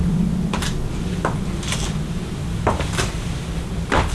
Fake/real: fake